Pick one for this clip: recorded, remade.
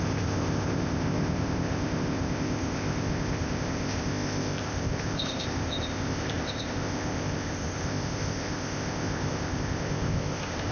remade